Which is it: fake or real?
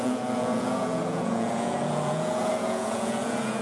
fake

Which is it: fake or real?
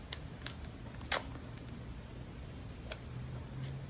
real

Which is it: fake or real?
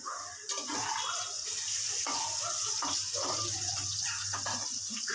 fake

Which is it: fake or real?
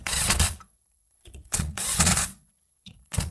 fake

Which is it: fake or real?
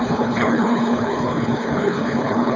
fake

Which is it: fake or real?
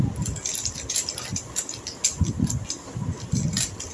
real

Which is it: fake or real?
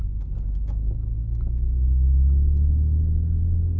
real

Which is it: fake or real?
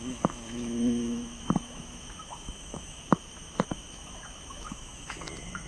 fake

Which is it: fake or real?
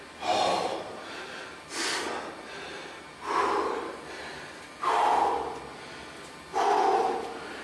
real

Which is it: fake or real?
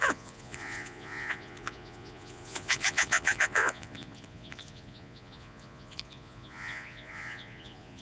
fake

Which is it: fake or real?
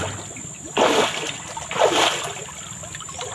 real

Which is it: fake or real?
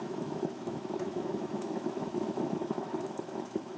fake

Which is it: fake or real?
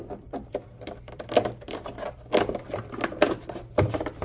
fake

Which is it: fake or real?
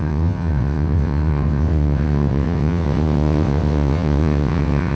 fake